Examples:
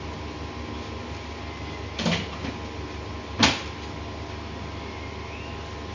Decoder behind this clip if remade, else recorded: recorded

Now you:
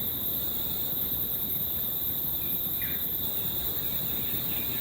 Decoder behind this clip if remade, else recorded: recorded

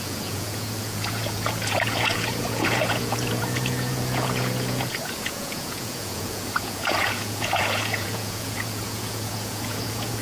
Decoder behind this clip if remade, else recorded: remade, vocoder, Vocos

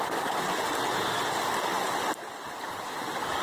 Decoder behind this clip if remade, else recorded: recorded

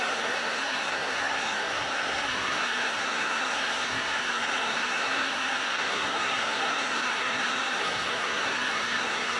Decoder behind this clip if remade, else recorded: remade, codec, SNAC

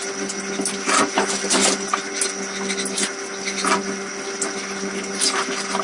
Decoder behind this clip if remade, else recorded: recorded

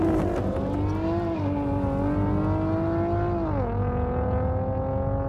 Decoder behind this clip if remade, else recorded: recorded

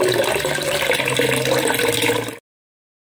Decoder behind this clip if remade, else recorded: recorded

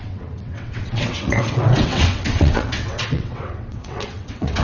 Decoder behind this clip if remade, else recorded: remade, vocoder, WaveNeXt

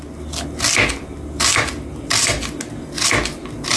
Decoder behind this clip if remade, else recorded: recorded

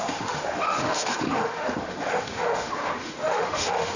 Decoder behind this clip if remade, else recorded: remade, autoencoder, DAC-VAE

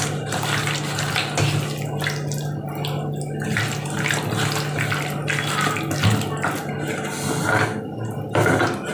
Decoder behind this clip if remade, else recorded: recorded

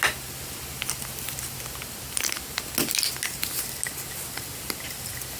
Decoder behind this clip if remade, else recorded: recorded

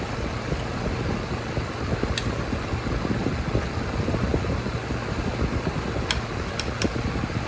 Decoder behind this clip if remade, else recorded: recorded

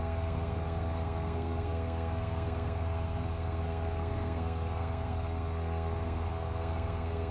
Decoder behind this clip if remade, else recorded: remade, codec, SNAC